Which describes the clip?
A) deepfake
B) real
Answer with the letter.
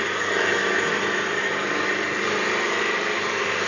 A